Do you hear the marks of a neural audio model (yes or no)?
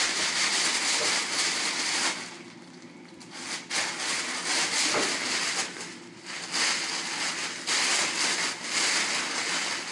no